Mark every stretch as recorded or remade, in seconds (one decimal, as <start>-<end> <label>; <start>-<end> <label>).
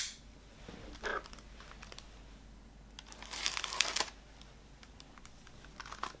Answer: 0.0-6.2 recorded